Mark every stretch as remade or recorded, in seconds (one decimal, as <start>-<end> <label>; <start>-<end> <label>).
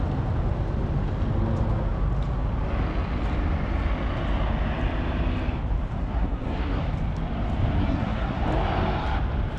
0.0-6.0 recorded; 6.0-6.8 remade; 6.8-7.8 recorded; 7.8-8.4 remade; 8.4-9.6 recorded